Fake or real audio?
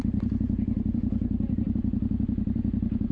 fake